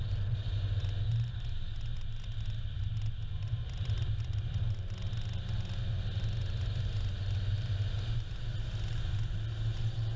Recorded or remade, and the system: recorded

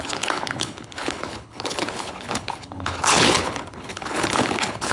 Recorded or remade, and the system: remade, codec, HILCodec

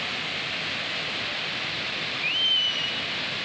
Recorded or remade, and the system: recorded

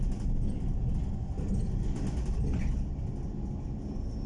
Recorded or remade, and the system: recorded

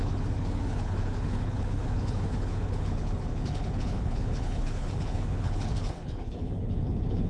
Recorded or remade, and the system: remade, codec, HILCodec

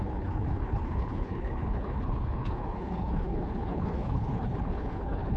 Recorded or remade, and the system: remade, codec, HILCodec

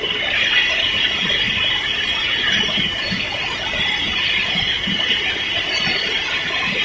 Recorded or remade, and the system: recorded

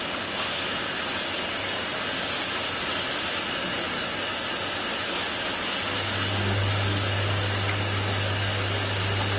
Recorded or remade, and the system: recorded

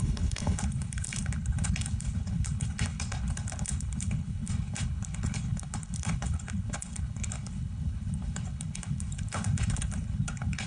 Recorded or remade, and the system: remade, codec, HILCodec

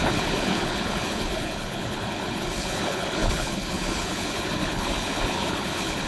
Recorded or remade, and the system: remade, codec, HILCodec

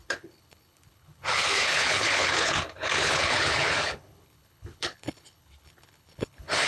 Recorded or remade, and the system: remade, codec, HILCodec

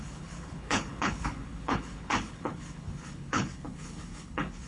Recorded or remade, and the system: remade, codec, HILCodec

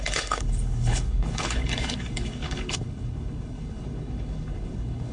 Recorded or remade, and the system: remade, codec, HILCodec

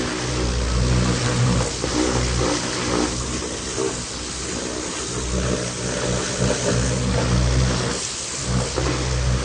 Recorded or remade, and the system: recorded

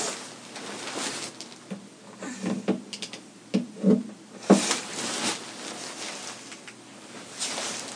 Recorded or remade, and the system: recorded